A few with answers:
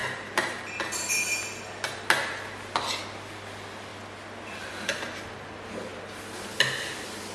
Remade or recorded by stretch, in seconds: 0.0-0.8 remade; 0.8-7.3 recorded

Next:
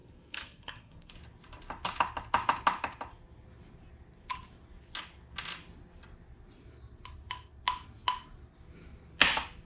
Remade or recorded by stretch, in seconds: 0.0-1.1 remade; 1.1-9.7 recorded

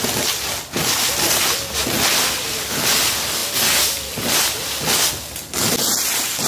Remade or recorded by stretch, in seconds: 0.0-6.5 recorded